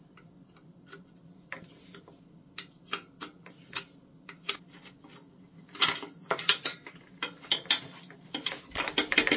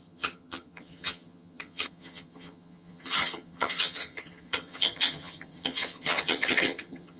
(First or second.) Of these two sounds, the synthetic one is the second